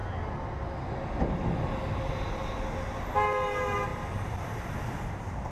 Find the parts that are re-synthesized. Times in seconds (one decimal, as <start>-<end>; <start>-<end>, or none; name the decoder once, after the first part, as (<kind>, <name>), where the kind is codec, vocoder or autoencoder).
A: 3.9-5.5 (vocoder, BigVGAN v2)